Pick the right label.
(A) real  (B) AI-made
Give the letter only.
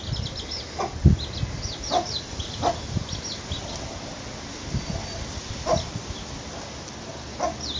A